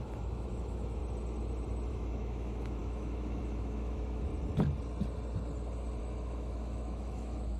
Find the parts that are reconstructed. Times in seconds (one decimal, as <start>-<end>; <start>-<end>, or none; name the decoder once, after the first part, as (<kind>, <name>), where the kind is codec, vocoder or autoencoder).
0.0-1.0 (autoencoder, DAC-VAE); 1.9-4.3; 6.0-7.6